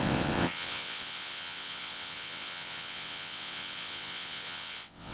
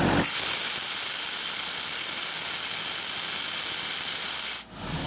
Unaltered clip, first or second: second